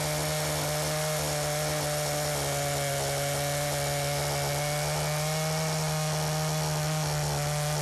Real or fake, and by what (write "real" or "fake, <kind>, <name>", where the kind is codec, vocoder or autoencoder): real